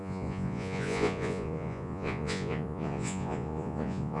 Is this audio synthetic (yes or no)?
yes